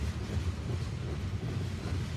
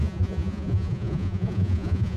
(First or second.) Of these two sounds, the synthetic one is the second